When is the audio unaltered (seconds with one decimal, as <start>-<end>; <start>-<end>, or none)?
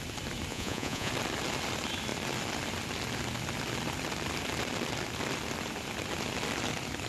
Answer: 0.0-0.5; 1.1-7.1